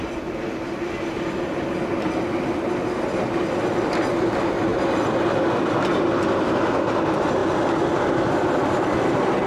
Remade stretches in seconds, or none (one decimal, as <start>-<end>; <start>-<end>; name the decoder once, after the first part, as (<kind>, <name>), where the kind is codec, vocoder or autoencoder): none

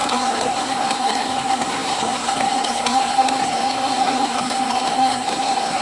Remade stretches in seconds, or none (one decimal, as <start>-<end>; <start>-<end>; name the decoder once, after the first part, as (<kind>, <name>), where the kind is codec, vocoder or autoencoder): 0.0-5.8 (codec, SNAC)

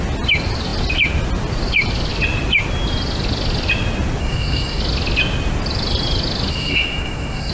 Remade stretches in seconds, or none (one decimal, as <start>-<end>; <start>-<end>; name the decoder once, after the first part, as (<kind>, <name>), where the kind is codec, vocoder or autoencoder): 4.2-4.8 (codec, SNAC); 6.5-7.5

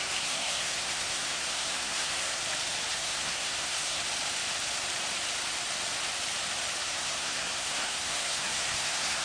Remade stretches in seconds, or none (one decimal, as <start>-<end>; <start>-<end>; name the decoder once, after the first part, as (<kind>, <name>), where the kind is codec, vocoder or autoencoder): 0.0-2.4 (codec, SNAC); 2.9-4.0; 6.8-9.2

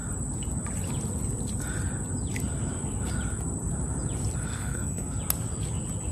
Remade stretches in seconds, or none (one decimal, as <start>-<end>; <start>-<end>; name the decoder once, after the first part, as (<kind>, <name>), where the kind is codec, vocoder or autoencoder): 4.4-5.2 (codec, SNAC)

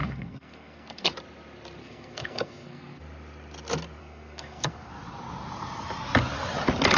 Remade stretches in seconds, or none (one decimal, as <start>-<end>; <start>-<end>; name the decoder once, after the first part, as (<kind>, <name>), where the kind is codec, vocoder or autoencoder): 0.0-1.1 (codec, SNAC); 1.8-3.0; 4.0-4.9

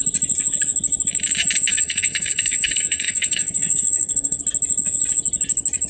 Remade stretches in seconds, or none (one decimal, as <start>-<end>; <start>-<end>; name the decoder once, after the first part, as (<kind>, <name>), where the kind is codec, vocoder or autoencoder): 1.7-4.4 (codec, SNAC)

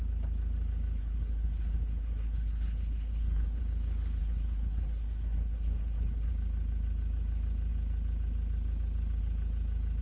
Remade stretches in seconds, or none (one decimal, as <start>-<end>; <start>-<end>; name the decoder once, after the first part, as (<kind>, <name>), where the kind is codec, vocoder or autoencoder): 1.0-3.6 (codec, SNAC); 4.2-6.3